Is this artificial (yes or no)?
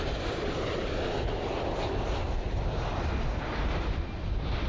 no